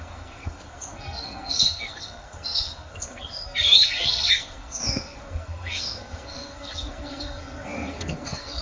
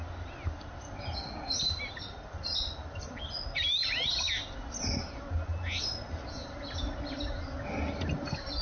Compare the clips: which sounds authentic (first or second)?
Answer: second